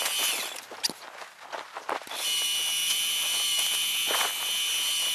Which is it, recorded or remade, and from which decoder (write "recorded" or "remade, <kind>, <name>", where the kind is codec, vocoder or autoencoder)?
recorded